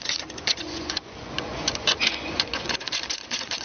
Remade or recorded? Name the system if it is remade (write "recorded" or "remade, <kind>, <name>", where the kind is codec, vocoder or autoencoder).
remade, vocoder, Vocos